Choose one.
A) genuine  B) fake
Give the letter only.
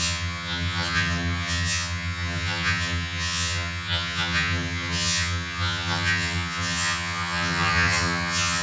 B